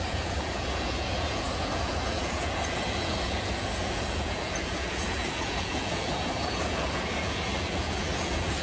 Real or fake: fake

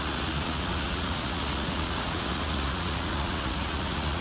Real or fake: fake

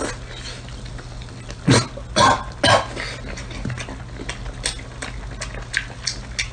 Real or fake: real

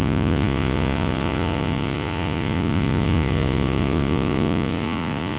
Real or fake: fake